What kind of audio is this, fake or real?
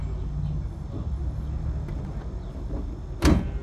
real